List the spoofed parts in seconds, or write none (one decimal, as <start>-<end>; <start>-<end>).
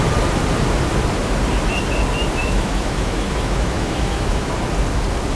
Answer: 2.4-4.5